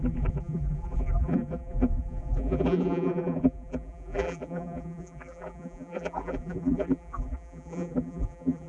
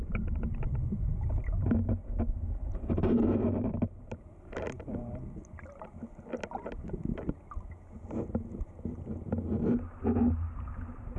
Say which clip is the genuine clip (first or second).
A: second